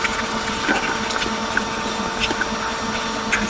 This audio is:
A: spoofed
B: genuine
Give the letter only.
B